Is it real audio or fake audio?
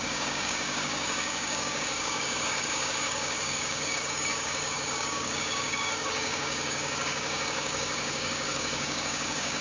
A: fake